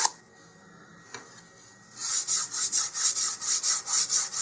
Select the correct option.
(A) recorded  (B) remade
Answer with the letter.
A